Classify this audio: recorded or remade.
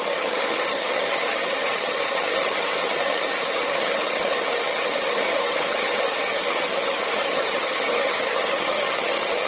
remade